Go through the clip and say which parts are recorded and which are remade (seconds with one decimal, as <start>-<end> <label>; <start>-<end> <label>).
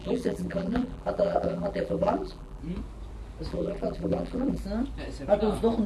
0.0-2.6 remade; 2.6-3.5 recorded; 3.5-4.6 remade; 4.6-5.9 recorded